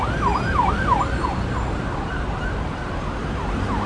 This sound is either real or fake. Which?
real